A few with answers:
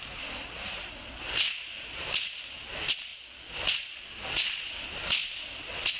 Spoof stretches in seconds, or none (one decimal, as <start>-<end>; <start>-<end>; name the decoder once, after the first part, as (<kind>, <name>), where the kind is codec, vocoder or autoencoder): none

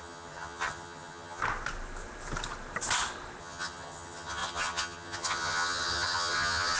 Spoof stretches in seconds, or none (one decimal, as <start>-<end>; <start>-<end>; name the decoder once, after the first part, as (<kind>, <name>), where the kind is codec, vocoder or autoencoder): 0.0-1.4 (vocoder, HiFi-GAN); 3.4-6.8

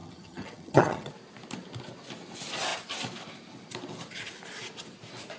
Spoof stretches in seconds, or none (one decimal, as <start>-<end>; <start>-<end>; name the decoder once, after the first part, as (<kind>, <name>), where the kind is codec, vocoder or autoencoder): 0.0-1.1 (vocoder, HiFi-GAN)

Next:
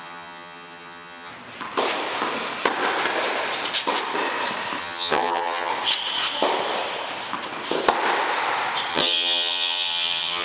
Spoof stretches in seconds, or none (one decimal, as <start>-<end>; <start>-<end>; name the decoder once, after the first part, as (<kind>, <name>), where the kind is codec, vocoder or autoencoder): 0.0-1.3 (vocoder, HiFi-GAN); 4.8-5.7; 8.9-10.4

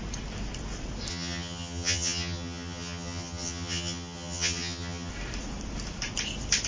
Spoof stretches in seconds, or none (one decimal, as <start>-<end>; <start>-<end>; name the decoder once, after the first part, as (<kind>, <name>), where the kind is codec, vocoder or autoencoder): 1.1-5.1 (vocoder, HiFi-GAN)